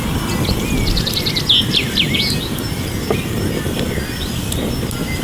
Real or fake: real